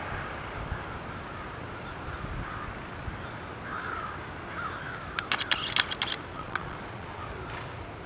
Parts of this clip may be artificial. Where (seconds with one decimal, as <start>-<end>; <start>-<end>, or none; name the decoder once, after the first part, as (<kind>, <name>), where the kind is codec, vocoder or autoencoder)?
6.3-7.2 (vocoder, Vocos)